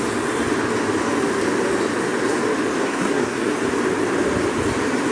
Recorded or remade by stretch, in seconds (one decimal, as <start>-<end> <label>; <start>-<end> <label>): 0.0-2.8 recorded; 2.8-3.5 remade; 3.5-5.1 recorded